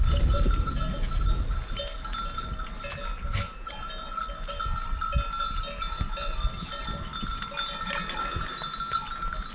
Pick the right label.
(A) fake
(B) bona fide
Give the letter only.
B